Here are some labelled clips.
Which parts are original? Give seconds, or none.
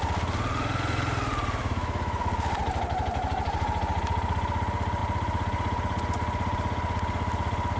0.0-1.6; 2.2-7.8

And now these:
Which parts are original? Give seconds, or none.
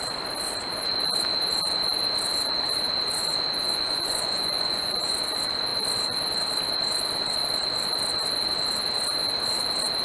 0.0-3.7; 5.2-10.0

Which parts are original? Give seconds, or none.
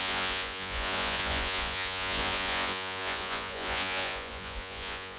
none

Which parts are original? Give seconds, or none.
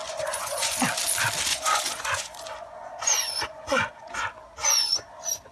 0.8-1.5; 4.1-4.6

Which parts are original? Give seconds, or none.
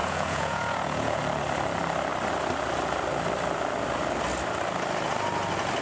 1.2-5.8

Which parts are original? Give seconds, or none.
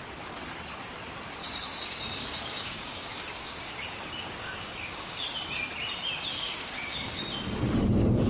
0.0-1.4; 5.2-6.3; 7.2-8.3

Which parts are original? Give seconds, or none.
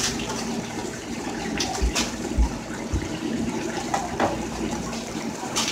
3.9-4.5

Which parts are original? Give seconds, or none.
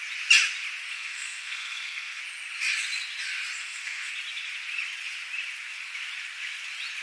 0.0-0.9; 2.2-3.6; 4.1-7.0